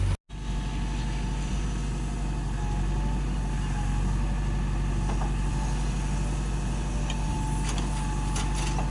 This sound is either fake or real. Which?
real